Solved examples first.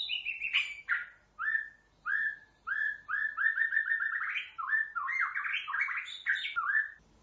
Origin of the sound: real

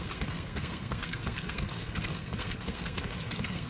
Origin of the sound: fake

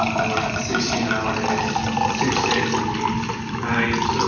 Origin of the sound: real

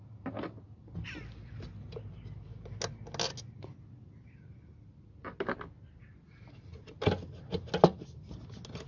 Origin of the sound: real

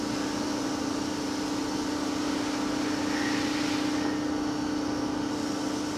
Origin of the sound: real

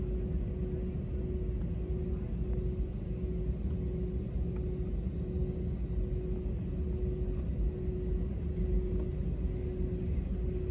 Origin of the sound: real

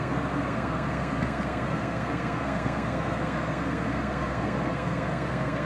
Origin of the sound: fake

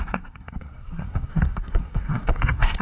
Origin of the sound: fake